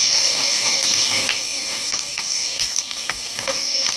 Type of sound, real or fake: fake